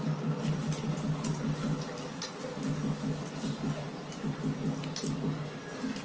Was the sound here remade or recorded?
recorded